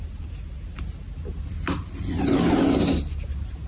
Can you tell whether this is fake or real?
real